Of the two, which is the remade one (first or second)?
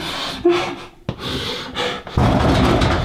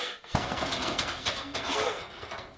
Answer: second